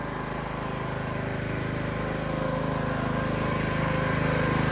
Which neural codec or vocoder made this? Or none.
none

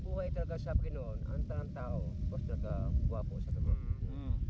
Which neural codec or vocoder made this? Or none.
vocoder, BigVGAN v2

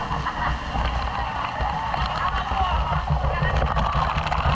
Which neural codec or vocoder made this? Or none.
none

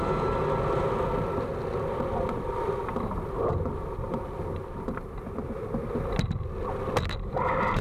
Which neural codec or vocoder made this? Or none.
none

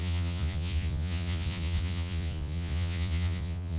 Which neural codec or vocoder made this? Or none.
vocoder, Vocos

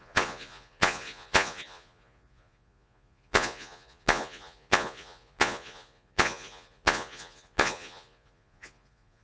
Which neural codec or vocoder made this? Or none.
vocoder, Vocos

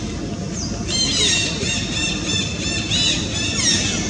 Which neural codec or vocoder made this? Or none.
none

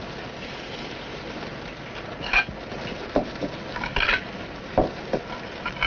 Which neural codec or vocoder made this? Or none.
none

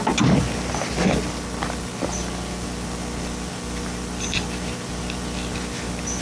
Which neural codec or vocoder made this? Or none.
none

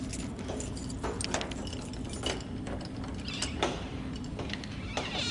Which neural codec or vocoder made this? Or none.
none